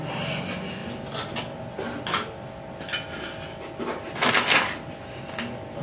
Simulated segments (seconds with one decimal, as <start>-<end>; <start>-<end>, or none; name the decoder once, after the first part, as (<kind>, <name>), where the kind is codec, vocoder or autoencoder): none